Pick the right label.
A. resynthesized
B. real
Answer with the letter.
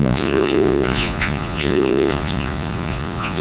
A